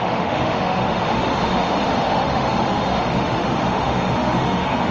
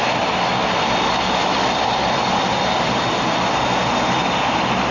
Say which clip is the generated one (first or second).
first